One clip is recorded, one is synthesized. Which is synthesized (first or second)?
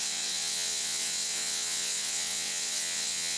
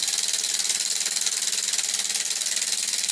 first